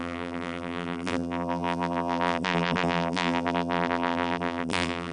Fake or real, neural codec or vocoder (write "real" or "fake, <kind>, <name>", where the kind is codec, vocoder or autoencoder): fake, vocoder, BigVGAN v2